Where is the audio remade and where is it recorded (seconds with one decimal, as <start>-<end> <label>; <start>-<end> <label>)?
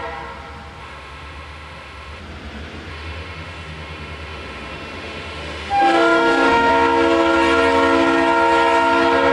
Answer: 0.0-0.8 recorded; 0.8-2.2 remade; 2.2-2.9 recorded; 2.9-6.7 remade; 6.7-9.3 recorded